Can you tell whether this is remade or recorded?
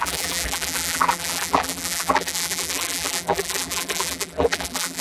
remade